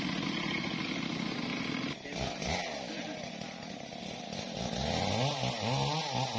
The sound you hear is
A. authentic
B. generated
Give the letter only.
A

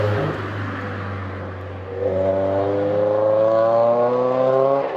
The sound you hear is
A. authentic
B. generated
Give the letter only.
A